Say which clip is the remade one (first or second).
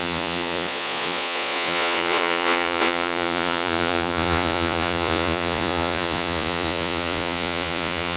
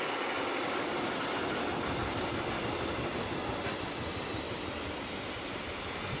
first